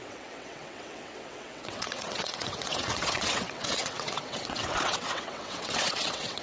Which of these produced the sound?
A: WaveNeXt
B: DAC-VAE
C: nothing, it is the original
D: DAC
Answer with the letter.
A